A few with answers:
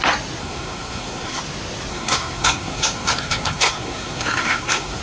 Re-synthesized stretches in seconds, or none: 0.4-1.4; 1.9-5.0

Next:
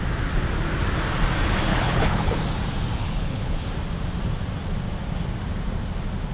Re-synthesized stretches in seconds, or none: 1.7-2.4; 2.9-3.7